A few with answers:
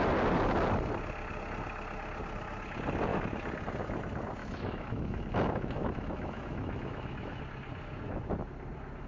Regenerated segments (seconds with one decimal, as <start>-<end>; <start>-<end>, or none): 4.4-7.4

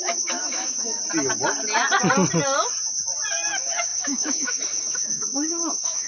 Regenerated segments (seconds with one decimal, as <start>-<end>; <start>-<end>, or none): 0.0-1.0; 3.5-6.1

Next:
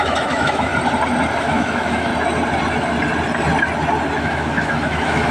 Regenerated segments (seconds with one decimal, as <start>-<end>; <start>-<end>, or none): 0.0-0.7; 1.4-2.1; 4.2-5.3